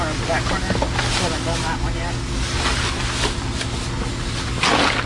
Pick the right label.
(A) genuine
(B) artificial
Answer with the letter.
A